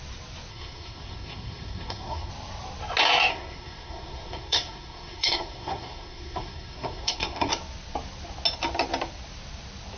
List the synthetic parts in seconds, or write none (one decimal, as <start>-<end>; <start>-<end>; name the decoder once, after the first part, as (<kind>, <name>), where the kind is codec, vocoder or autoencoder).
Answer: 0.5-2.3 (codec, SNAC); 3.3-7.5